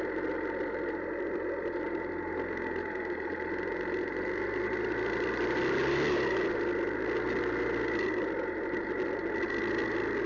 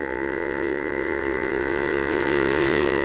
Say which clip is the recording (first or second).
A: first